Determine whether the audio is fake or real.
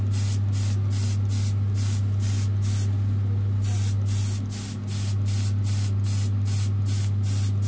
real